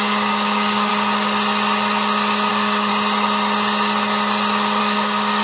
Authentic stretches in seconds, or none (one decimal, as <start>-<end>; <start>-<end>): 0.9-2.5; 2.9-4.8